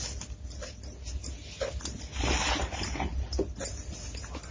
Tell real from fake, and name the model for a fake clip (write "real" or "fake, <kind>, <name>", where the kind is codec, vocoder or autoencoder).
real